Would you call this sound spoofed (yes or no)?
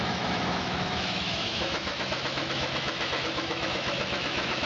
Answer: yes